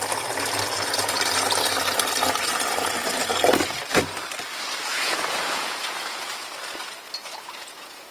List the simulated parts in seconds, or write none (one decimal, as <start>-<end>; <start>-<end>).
4.9-6.3; 7.2-8.1